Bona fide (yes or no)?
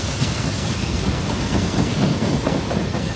no